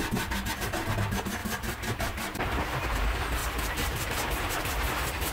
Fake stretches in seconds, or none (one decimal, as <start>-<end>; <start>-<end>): none